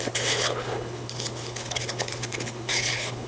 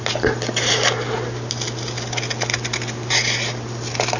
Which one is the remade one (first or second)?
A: first